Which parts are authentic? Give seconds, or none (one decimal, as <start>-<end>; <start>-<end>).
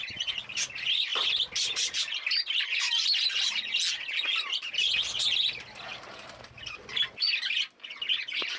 0.0-1.1; 2.1-5.9; 6.4-8.6